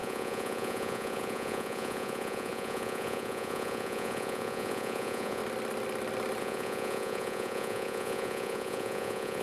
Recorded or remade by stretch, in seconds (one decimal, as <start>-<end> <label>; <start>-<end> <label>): 0.0-5.4 remade; 5.4-6.4 recorded; 6.4-9.4 remade